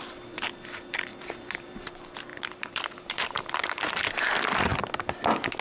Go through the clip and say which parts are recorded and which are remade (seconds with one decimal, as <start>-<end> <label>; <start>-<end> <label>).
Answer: 0.0-1.1 recorded; 1.1-1.9 remade; 1.9-2.3 recorded; 2.3-4.1 remade; 4.1-5.6 recorded